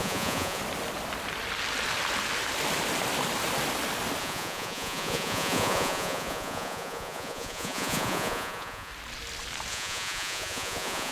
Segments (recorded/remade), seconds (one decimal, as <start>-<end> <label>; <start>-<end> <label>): 0.0-0.6 remade; 0.6-4.2 recorded; 4.2-8.9 remade; 8.9-9.7 recorded; 9.7-11.1 remade